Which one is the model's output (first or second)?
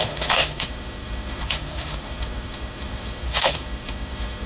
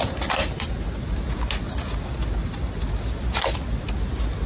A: first